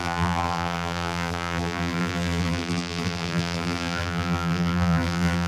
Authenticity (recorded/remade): remade